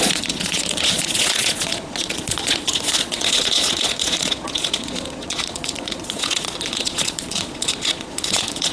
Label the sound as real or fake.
fake